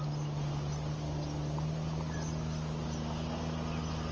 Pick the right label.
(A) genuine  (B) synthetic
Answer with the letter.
A